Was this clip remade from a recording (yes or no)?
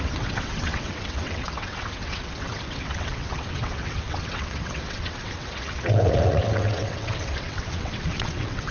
yes